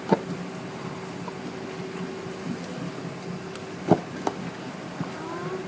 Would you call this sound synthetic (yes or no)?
no